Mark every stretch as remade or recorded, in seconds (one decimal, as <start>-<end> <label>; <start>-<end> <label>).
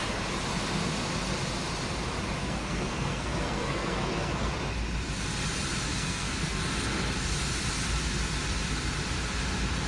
0.0-2.4 recorded; 2.4-4.5 remade; 4.5-5.9 recorded; 5.9-6.6 remade; 6.6-9.9 recorded